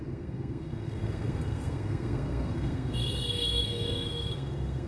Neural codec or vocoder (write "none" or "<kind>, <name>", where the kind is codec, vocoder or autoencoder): codec, SNAC